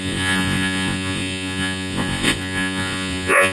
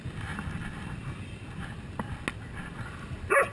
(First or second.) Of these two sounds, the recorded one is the second